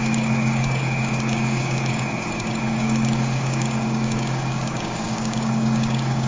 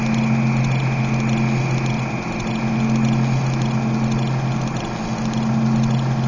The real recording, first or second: second